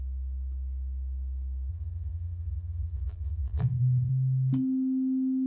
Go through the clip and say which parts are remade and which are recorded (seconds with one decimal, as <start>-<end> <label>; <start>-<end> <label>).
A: 0.0-1.7 recorded; 1.7-4.1 remade; 4.1-5.5 recorded